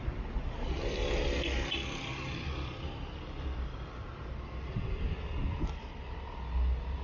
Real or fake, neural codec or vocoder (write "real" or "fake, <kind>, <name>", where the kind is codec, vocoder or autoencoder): real